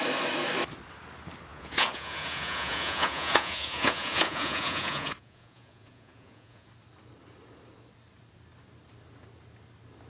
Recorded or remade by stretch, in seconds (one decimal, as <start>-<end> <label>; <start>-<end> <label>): 0.0-1.5 recorded; 1.5-6.7 remade; 6.7-10.1 recorded

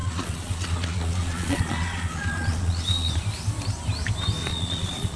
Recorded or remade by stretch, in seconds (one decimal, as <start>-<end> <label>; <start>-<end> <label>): 0.0-3.1 remade; 3.1-4.4 recorded; 4.4-5.2 remade

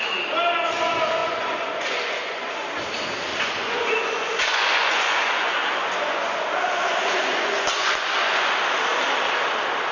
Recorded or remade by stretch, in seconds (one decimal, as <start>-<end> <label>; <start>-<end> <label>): 0.0-1.2 recorded; 1.2-2.5 remade; 2.5-3.3 recorded; 3.3-8.5 remade; 8.5-9.9 recorded

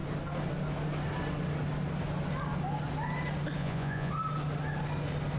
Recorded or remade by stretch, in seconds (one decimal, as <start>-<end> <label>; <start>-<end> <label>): 0.0-3.6 recorded; 3.6-4.1 remade; 4.1-5.4 recorded

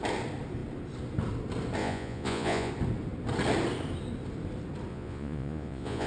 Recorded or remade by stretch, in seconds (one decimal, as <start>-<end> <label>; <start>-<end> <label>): 0.0-1.8 recorded; 1.8-2.7 remade; 2.7-4.9 recorded; 4.9-6.1 remade

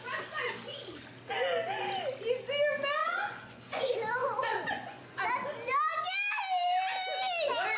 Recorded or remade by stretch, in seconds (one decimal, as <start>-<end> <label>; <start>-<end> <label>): 0.0-3.0 recorded; 3.0-3.8 remade; 3.8-4.2 recorded; 4.2-5.2 remade; 5.2-7.8 recorded

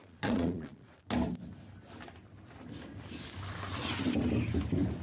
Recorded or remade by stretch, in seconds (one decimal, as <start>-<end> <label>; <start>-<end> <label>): 0.0-1.0 remade; 1.0-5.0 recorded